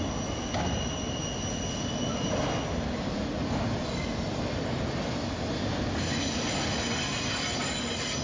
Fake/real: real